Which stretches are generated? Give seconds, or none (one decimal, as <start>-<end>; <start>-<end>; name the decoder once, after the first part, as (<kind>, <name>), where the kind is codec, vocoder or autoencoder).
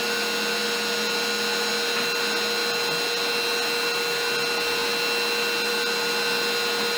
none